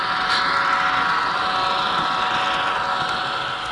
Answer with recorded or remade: recorded